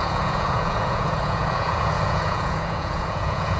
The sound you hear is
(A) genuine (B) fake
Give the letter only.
B